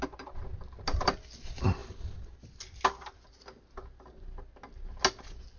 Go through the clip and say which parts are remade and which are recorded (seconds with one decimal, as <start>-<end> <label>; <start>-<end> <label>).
0.0-5.6 recorded